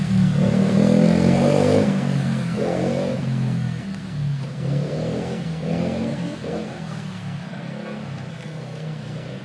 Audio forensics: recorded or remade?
remade